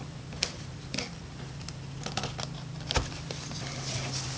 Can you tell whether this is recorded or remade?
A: remade